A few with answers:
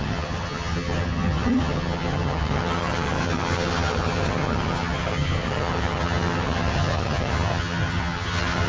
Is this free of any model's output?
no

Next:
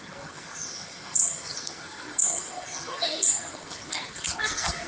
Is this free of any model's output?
no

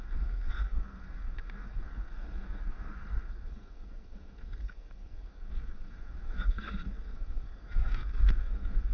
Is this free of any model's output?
no